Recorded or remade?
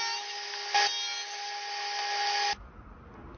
recorded